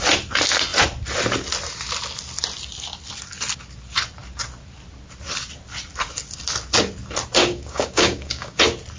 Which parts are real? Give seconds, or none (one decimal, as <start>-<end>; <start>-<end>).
0.0-7.4; 8.6-9.0